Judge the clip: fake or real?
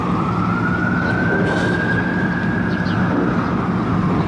real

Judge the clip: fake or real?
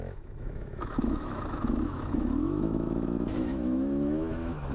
fake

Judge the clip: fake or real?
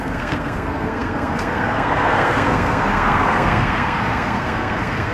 fake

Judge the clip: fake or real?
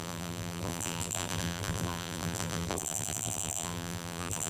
fake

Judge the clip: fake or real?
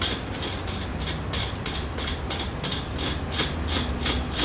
real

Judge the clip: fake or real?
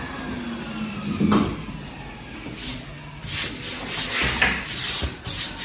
real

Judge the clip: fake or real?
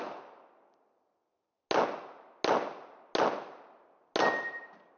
real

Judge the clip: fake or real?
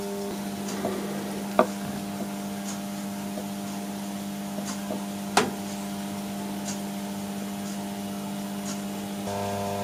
real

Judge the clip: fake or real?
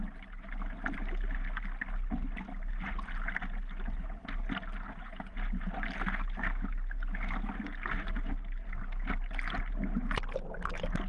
real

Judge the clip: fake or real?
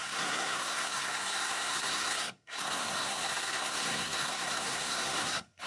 fake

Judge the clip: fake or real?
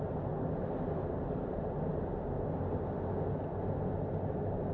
real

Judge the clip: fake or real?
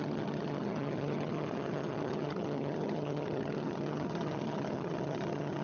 fake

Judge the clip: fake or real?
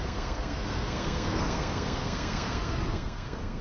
fake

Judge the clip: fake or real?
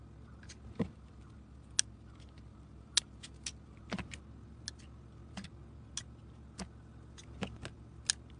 real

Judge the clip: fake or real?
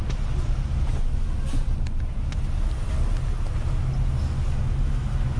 real